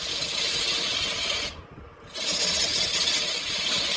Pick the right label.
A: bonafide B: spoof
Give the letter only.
A